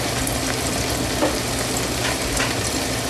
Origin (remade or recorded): recorded